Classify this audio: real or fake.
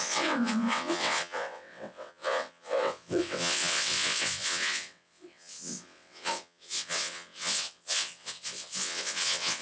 fake